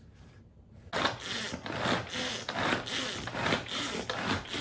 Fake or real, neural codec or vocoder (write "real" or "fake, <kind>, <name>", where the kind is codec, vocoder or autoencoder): real